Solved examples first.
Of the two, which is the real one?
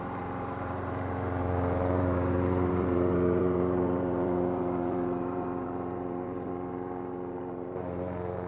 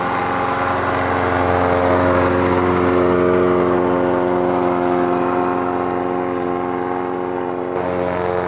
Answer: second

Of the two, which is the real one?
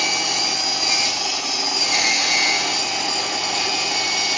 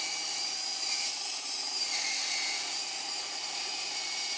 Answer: first